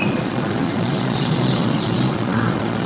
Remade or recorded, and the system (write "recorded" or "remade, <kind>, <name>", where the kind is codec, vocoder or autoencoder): remade, vocoder, Vocos